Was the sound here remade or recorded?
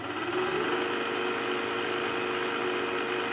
recorded